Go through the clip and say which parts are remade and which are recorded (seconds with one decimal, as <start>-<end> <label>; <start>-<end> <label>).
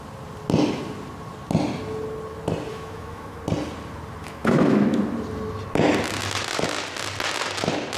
0.0-2.7 recorded; 2.7-3.4 remade; 3.4-4.2 recorded; 4.2-5.0 remade; 5.0-8.0 recorded